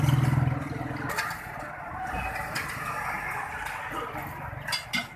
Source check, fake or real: real